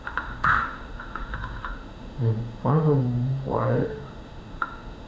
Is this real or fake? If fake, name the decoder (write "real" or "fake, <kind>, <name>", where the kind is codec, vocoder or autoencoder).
fake, autoencoder, DAC-VAE